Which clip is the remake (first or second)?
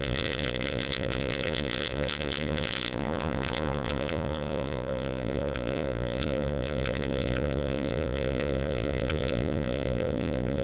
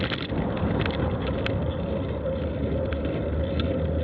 first